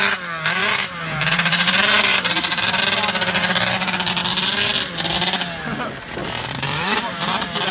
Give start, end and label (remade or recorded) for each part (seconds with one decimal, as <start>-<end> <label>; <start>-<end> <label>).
0.0-0.6 recorded; 0.6-2.3 remade; 2.3-6.2 recorded; 6.2-7.3 remade; 7.3-7.7 recorded